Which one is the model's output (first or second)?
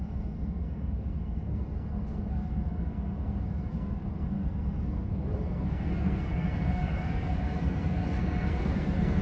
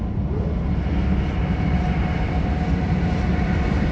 first